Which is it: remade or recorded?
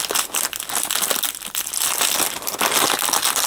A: recorded